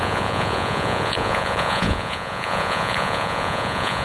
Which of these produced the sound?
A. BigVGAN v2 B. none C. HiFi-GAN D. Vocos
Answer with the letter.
D